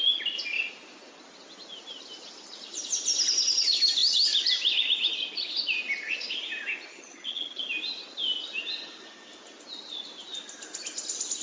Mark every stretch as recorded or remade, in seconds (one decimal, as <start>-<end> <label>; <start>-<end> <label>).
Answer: 0.0-6.9 recorded; 6.9-7.6 remade; 7.6-11.4 recorded